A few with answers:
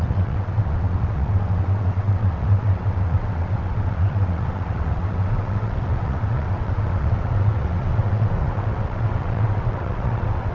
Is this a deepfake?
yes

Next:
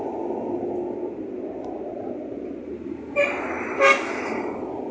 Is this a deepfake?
no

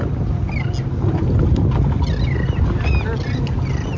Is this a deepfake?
no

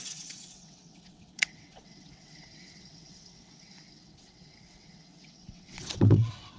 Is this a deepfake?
yes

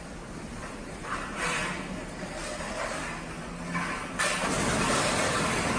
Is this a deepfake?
no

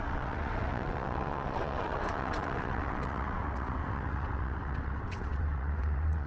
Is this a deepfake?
yes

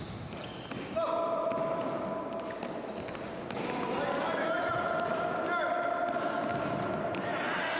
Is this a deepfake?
no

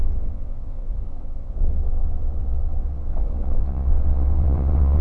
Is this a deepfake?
yes